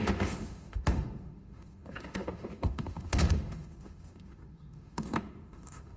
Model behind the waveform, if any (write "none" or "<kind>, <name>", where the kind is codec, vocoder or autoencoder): autoencoder, DAC-VAE